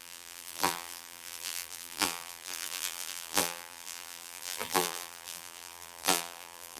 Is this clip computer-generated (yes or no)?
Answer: yes